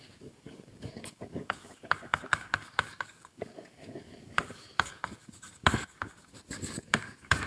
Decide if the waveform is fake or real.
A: fake